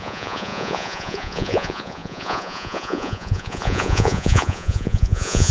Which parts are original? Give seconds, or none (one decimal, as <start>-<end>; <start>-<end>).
none